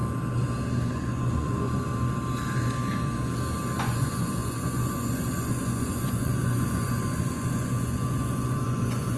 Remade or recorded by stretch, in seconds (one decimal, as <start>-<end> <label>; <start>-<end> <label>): 0.0-0.9 recorded; 0.9-1.9 remade; 1.9-3.8 recorded; 3.8-9.2 remade